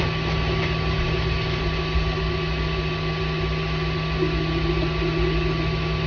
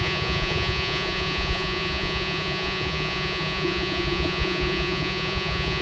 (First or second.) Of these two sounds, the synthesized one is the second